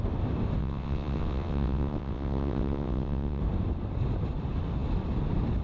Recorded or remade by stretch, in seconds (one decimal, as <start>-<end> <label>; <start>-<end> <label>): 0.0-0.6 recorded; 0.6-3.4 remade; 3.4-5.6 recorded